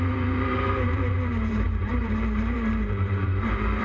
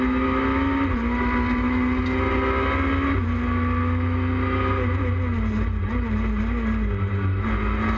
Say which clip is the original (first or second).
second